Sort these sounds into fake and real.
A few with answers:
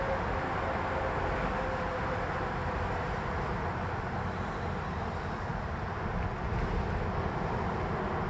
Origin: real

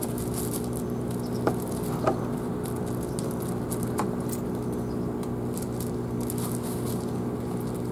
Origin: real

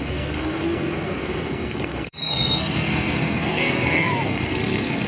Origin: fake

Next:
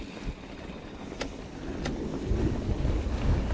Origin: real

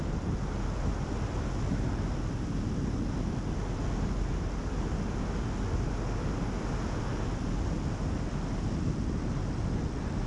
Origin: real